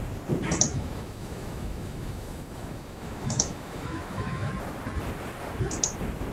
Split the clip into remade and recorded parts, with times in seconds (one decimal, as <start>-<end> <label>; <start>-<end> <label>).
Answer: 0.0-0.7 recorded; 0.7-4.5 remade; 4.5-6.3 recorded